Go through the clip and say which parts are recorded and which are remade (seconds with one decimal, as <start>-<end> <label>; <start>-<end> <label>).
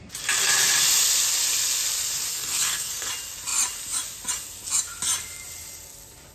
0.0-2.3 recorded; 2.3-3.1 remade; 3.1-6.3 recorded